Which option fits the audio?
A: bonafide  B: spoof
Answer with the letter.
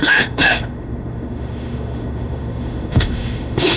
B